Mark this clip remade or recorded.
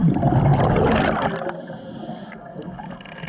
recorded